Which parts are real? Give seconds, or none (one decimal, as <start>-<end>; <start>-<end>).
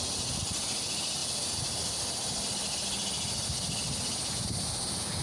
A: 0.0-5.2